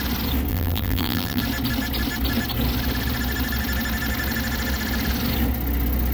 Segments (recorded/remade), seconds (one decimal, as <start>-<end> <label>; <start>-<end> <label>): 0.0-0.5 recorded; 0.5-1.4 remade; 1.4-6.1 recorded